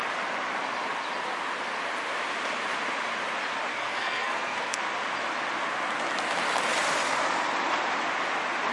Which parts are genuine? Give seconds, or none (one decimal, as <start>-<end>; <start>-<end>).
0.0-3.7; 4.8-8.7